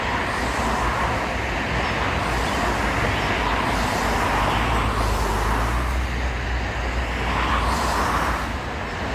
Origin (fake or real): real